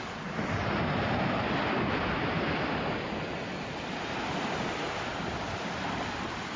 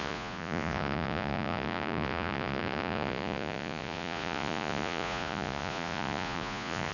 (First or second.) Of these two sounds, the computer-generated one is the second